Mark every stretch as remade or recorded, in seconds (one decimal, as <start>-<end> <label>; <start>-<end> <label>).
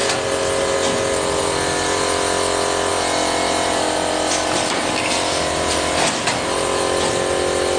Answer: 0.0-7.8 recorded